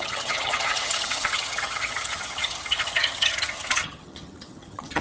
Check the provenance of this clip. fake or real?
fake